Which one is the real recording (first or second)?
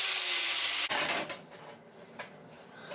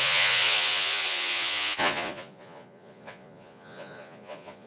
first